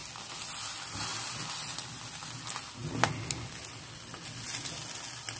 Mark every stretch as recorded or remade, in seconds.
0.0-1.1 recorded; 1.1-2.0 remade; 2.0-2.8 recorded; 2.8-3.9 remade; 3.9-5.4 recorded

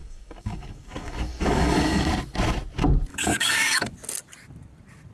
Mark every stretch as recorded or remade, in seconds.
0.0-2.1 remade; 2.1-3.1 recorded; 3.1-3.9 remade; 3.9-5.1 recorded

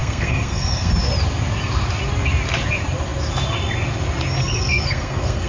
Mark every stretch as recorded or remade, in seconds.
0.0-0.9 remade; 0.9-4.4 recorded; 4.4-5.5 remade

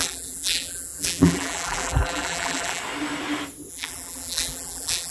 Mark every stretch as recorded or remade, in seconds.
0.0-2.8 remade; 2.8-3.7 recorded; 3.7-5.1 remade

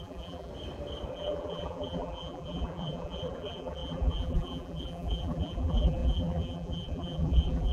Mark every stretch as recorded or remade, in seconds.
0.0-0.5 remade; 0.5-1.1 recorded; 1.1-7.7 remade